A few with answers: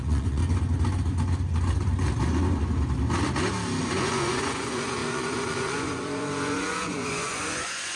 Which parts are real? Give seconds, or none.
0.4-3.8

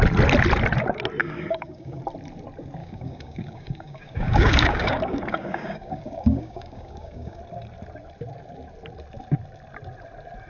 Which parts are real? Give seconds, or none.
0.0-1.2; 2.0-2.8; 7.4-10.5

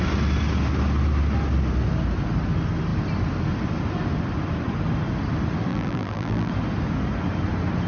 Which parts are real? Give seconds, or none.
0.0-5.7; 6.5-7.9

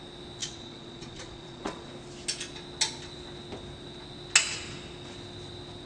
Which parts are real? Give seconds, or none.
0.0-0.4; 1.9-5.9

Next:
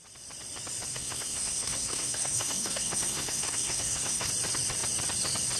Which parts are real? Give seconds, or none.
0.0-0.9; 4.3-5.6

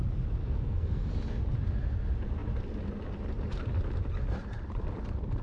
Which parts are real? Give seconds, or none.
0.0-0.4; 1.1-5.4